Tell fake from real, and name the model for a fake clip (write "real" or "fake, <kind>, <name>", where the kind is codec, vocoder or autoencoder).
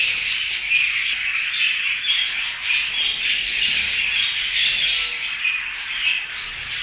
real